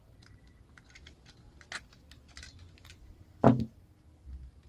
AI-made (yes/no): no